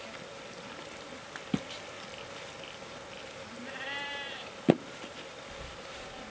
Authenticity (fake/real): real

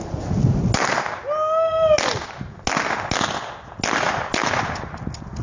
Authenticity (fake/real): real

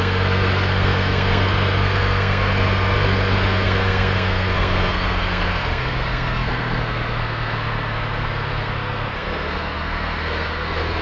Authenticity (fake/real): fake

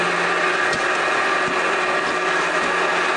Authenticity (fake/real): real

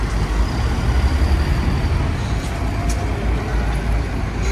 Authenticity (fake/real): real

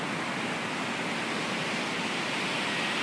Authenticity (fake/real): real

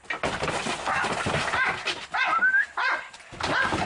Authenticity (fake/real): real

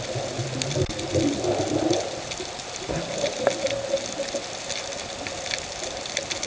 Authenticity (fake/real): real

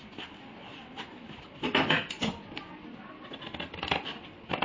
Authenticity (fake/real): real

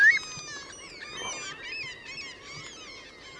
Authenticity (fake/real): real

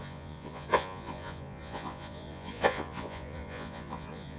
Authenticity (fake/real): fake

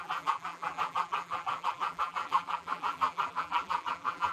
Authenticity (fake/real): fake